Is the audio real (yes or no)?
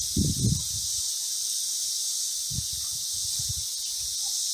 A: yes